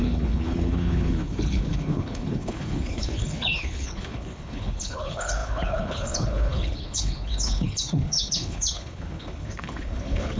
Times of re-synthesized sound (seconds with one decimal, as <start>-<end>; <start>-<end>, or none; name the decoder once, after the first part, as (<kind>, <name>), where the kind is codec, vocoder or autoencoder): 0.0-10.4 (codec, HILCodec)